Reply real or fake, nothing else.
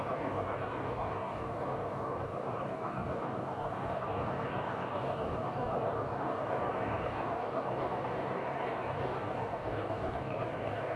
fake